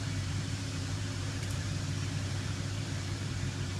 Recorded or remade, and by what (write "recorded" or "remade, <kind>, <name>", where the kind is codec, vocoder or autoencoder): remade, vocoder, BigVGAN v2